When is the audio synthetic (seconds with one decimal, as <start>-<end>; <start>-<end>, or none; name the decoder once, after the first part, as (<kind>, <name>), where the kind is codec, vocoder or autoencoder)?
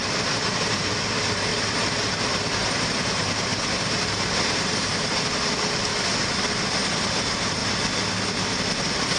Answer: 0.0-5.9 (vocoder, BigVGAN v2); 6.9-7.6; 8.4-9.2